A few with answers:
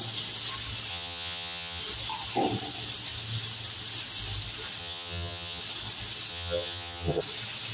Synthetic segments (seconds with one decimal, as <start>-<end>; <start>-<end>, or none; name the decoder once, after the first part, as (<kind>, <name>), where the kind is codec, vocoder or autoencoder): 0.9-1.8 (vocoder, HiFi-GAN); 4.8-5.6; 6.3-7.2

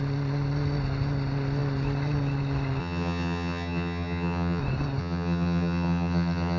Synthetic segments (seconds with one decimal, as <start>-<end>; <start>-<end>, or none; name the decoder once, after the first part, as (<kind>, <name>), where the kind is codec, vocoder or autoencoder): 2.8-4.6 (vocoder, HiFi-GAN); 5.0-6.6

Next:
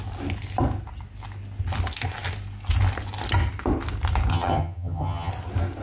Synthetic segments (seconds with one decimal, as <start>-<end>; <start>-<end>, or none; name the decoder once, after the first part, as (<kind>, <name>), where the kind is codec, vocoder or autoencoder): 4.3-5.3 (vocoder, HiFi-GAN)